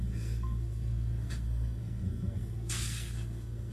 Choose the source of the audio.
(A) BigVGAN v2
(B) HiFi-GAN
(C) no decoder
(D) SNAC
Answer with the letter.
D